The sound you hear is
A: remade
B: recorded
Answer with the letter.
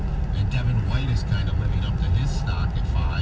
B